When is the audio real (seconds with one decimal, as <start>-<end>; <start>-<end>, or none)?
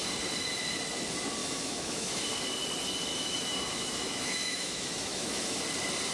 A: 0.0-1.4; 2.2-3.1; 5.6-6.1